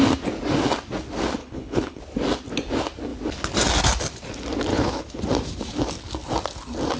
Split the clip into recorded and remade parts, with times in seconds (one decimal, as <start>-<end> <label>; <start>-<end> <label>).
0.0-1.4 recorded; 1.4-2.0 remade; 2.0-4.7 recorded; 4.7-5.2 remade; 5.2-7.0 recorded